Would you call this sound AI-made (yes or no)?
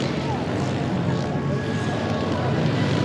yes